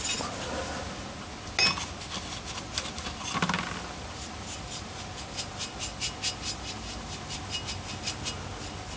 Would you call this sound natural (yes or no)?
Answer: yes